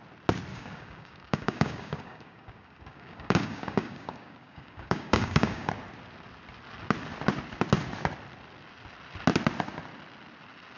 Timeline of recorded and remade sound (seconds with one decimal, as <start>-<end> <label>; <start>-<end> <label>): 0.0-0.5 recorded; 0.5-5.7 remade; 5.7-10.8 recorded